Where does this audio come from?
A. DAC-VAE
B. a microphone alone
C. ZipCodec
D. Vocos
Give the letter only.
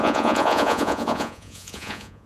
D